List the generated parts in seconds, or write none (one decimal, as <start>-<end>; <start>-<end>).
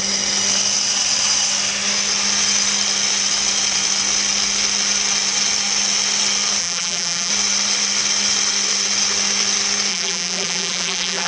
6.6-7.3; 9.9-11.3